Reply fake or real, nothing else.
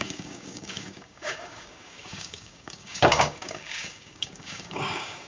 fake